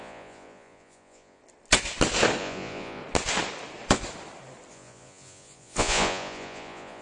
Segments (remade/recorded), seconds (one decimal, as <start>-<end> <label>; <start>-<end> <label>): 0.0-1.4 remade; 1.4-2.4 recorded; 2.4-3.0 remade; 3.0-4.7 recorded; 4.7-7.0 remade